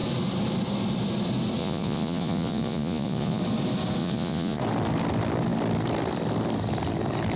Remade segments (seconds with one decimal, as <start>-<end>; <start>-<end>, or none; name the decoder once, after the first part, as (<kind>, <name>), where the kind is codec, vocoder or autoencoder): 1.6-3.4 (vocoder, Vocos); 4.0-4.6